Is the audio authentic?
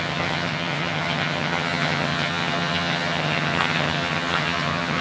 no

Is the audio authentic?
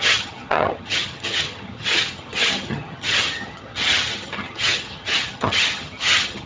no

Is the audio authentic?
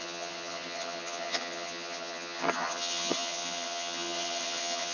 no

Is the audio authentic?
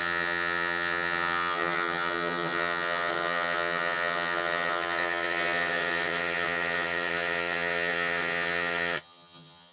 no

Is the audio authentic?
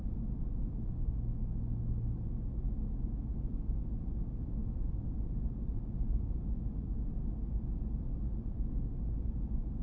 yes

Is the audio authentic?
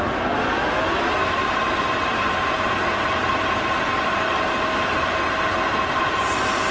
yes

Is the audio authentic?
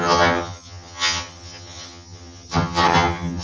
no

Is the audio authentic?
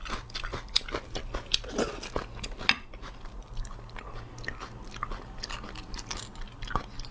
yes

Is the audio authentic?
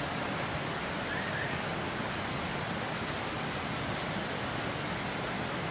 yes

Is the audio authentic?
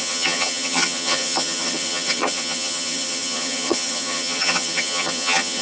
no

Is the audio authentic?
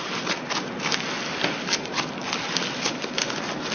yes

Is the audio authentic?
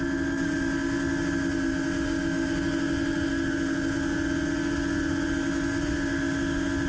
yes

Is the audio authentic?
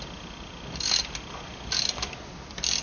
yes